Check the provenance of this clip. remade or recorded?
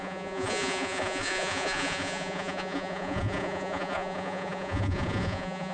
remade